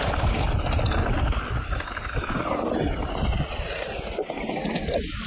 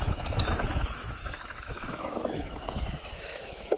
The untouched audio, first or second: first